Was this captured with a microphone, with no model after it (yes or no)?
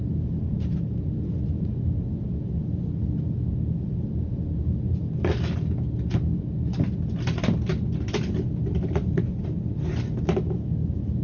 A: yes